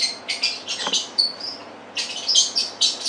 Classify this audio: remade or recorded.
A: recorded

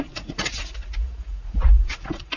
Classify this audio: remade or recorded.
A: remade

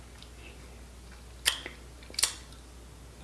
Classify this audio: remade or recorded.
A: recorded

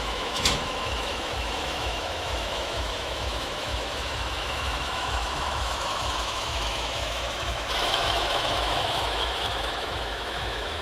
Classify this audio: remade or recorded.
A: remade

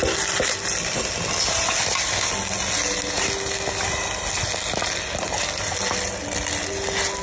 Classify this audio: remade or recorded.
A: recorded